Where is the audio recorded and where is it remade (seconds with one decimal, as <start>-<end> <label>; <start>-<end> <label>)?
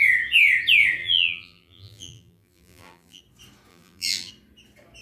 0.0-1.0 recorded; 1.0-3.2 remade; 3.2-3.7 recorded; 3.7-4.3 remade; 4.3-5.0 recorded